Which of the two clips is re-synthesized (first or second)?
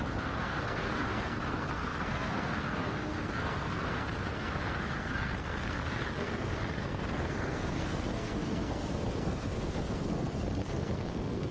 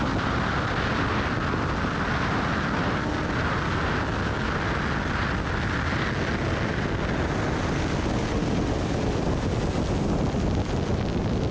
first